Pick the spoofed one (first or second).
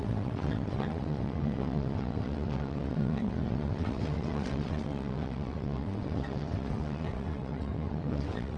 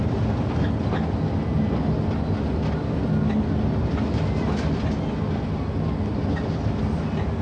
first